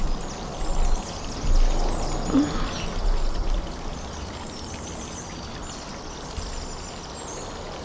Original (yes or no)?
yes